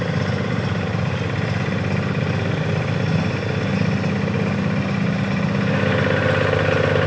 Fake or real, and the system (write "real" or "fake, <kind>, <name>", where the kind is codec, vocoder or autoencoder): real